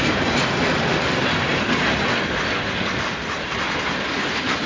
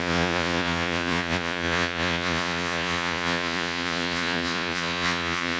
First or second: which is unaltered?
first